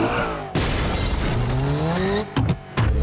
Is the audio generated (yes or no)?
no